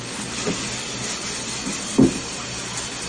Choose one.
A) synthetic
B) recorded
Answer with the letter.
B